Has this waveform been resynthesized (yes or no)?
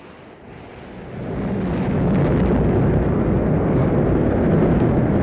no